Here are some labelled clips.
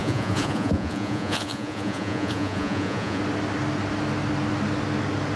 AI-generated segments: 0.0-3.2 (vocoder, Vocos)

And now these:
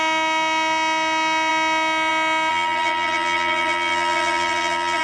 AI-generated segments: 2.5-5.0 (vocoder, BigVGAN v2)

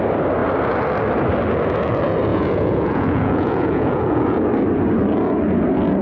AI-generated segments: 2.3-4.5 (vocoder, Vocos)

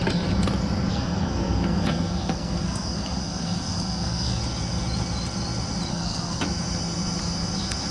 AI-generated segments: 0.9-4.4 (codec, SNAC); 5.9-6.4

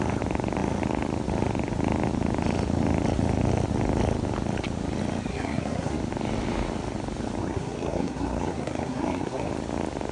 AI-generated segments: 5.3-6.0 (codec, SNAC); 7.4-9.5

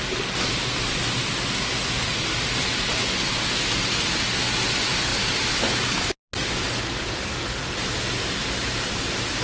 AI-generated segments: none

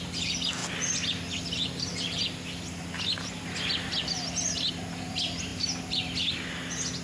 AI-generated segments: none

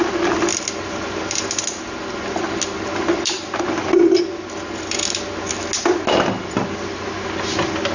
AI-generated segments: none